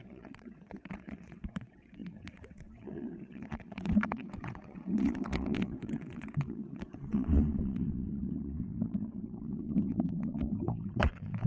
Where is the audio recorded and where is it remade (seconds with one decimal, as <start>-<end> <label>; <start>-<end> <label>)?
0.0-11.5 remade